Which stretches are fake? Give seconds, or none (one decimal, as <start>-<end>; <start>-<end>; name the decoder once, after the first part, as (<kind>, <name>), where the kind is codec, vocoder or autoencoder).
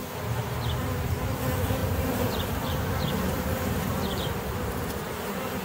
0.4-1.1 (vocoder, BigVGAN v2); 1.8-5.6